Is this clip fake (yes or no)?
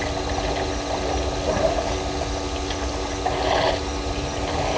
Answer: no